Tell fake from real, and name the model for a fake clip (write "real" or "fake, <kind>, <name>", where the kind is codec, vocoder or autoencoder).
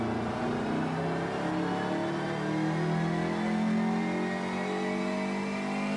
real